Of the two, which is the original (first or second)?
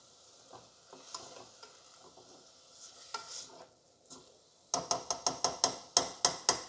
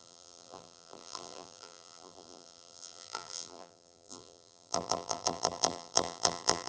first